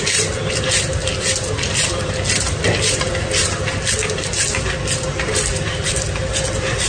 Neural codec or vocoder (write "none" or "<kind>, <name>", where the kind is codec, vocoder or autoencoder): none